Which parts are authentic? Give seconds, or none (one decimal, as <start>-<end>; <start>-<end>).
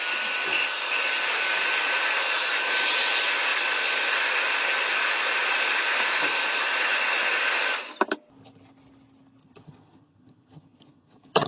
0.0-9.4